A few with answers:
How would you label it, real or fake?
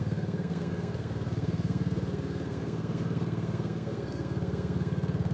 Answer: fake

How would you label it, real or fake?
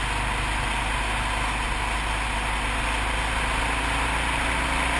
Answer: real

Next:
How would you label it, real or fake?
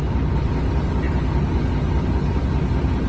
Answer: real